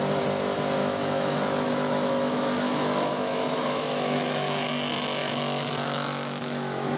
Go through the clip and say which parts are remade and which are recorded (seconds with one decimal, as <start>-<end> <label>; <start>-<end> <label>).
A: 0.0-0.8 recorded; 0.8-4.7 remade; 4.7-5.2 recorded; 5.2-7.0 remade